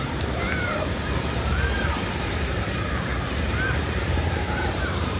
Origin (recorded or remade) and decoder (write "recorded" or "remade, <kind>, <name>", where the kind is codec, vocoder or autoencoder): remade, vocoder, BigVGAN v2